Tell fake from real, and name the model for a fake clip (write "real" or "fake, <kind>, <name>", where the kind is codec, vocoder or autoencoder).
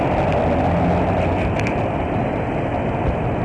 real